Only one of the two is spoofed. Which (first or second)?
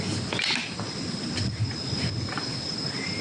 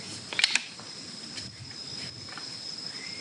second